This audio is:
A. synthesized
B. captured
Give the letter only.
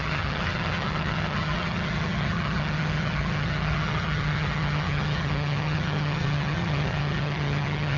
A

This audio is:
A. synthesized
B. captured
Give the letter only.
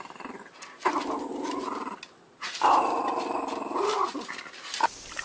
B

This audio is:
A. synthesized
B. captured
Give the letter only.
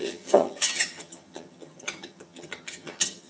A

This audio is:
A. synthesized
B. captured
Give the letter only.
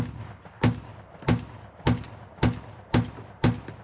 B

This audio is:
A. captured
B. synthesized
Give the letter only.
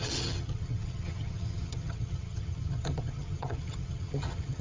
B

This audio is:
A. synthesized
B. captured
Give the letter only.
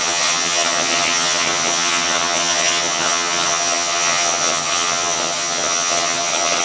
A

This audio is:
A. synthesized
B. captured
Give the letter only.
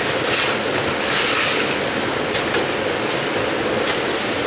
B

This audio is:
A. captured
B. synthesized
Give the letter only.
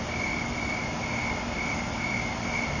A